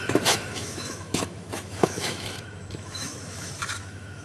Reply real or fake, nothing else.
fake